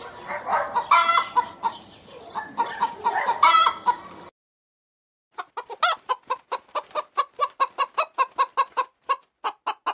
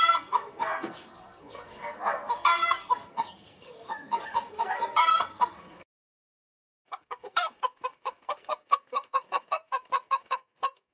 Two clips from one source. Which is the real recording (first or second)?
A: first